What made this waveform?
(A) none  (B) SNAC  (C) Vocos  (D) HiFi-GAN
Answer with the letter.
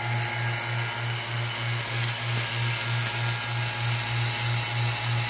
A